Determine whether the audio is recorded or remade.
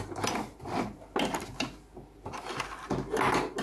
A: recorded